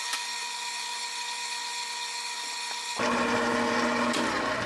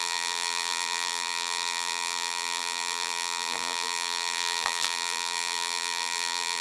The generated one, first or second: second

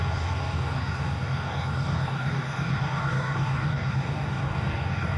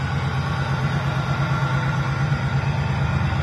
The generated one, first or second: first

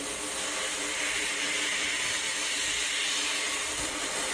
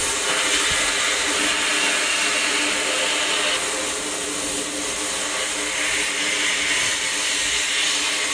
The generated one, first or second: first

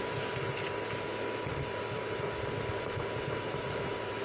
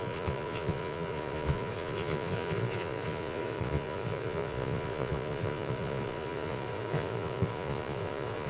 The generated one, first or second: second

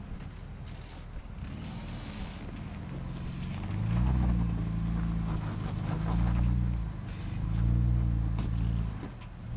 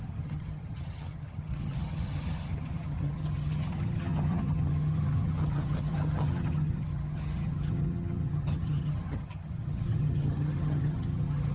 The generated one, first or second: second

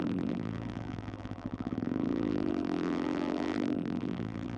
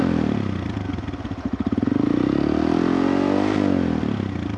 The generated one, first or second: first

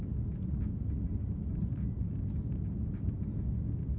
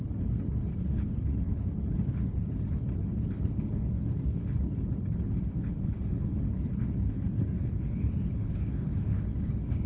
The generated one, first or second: second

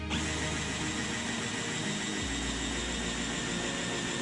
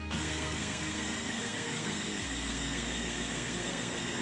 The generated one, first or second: second